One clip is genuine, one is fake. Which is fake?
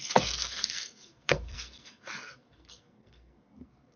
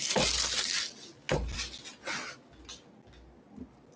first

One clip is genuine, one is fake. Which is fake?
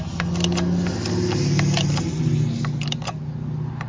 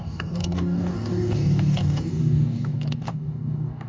second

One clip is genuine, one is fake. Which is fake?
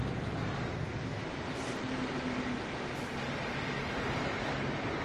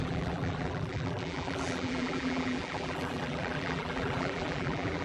second